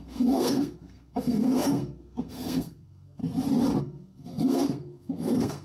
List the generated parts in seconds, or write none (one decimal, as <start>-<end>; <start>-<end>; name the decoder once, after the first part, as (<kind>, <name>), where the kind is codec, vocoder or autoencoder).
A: 0.0-3.2 (codec, SNAC); 3.8-5.6